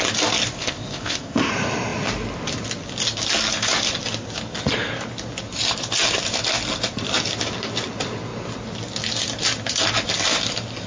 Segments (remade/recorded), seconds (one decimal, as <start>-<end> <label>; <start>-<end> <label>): 0.0-0.5 recorded; 0.5-1.5 remade; 1.5-10.9 recorded